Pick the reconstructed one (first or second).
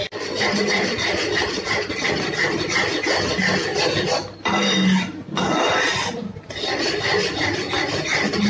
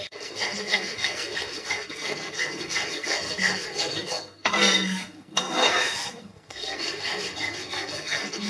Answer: second